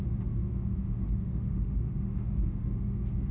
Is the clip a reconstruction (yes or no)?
yes